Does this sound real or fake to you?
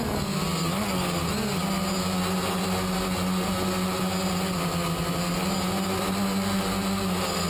real